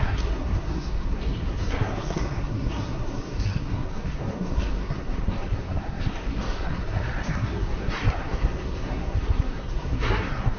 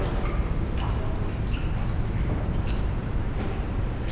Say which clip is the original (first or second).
second